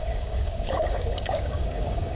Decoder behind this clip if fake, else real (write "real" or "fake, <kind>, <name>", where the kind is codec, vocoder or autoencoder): fake, codec, DAC